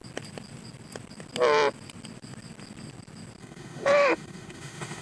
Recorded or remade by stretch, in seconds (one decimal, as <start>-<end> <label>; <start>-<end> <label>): 0.0-3.4 recorded; 3.4-5.0 remade